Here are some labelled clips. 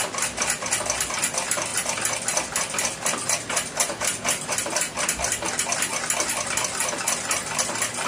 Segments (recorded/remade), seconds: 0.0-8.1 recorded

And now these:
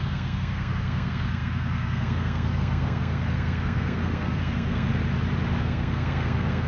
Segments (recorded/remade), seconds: 0.0-4.9 remade; 4.9-5.6 recorded; 5.6-6.7 remade

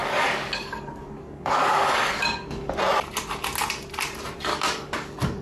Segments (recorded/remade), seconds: 0.0-2.8 remade; 2.8-4.5 recorded; 4.5-5.4 remade

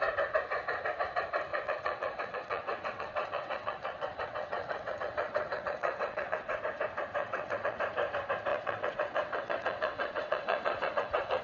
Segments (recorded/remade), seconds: 0.0-1.5 recorded; 1.5-6.6 remade; 6.6-7.2 recorded; 7.2-7.8 remade; 7.8-8.5 recorded; 8.5-11.4 remade

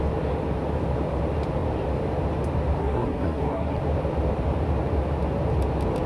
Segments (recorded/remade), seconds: 0.0-2.8 recorded; 2.8-3.8 remade; 3.8-6.1 recorded

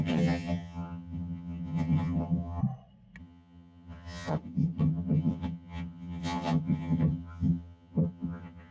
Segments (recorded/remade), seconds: 0.0-2.6 remade; 2.6-3.2 recorded; 3.2-8.7 remade